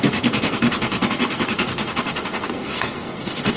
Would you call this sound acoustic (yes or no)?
no